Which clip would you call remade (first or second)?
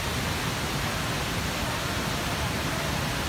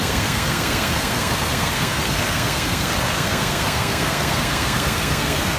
second